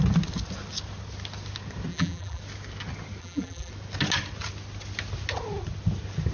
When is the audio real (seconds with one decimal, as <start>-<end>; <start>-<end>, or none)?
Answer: 0.0-1.9; 2.4-3.2; 3.7-6.3